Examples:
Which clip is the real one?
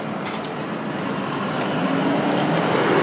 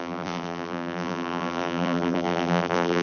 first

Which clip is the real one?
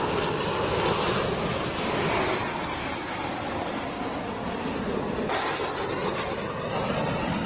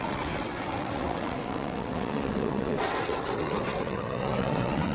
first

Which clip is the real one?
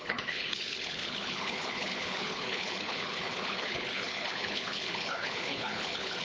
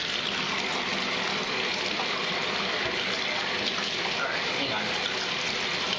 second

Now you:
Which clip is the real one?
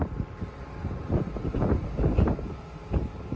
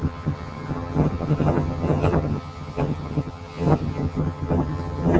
first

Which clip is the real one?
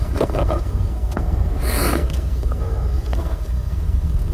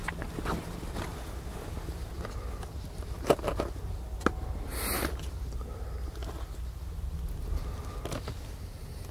second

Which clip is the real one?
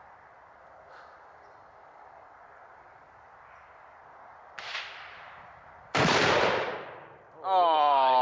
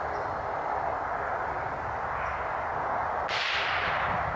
second